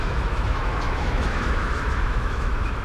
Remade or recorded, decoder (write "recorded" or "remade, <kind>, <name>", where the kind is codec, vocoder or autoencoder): remade, autoencoder, DAC-VAE